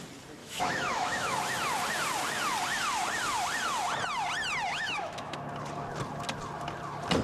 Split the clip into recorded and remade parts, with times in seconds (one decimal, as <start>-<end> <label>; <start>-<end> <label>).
0.0-0.4 recorded; 0.4-1.4 remade; 1.4-4.7 recorded; 4.7-5.4 remade; 5.4-7.2 recorded